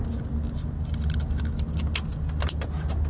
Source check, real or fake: real